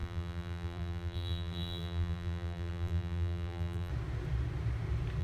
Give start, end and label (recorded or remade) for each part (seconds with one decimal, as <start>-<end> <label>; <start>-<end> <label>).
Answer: 0.0-3.9 remade; 3.9-5.2 recorded